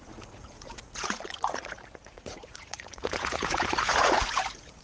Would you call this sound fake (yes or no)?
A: yes